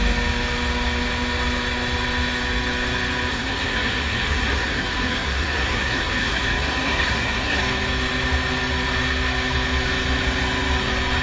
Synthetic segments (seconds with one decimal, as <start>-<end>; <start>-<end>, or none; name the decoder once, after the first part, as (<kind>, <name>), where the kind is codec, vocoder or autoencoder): 3.3-7.6 (codec, SNAC)